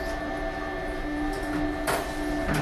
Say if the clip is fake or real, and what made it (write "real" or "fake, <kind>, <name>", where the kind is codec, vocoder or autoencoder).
real